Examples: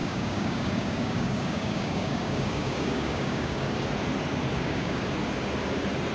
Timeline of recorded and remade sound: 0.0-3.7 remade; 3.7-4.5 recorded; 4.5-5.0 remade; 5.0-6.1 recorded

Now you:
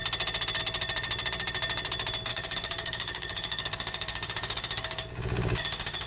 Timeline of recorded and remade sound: 0.0-2.3 recorded; 2.3-6.1 remade

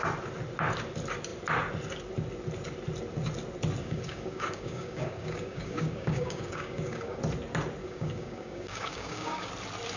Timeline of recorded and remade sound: 0.0-3.8 recorded; 3.8-7.2 remade; 7.2-7.8 recorded; 7.8-9.5 remade; 9.5-10.0 recorded